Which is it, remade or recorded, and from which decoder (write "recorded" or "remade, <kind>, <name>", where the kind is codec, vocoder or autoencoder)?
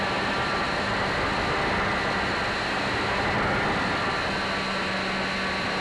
recorded